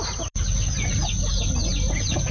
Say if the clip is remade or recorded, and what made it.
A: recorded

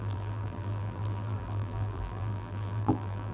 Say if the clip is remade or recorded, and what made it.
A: remade, vocoder, BigVGAN v2